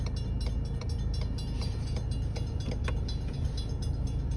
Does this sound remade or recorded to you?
recorded